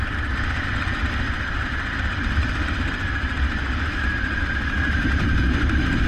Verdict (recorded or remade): remade